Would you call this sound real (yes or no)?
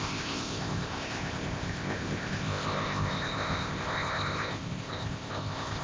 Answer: no